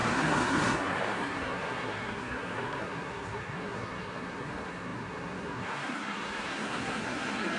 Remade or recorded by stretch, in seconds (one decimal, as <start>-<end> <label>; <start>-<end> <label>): 0.0-7.6 remade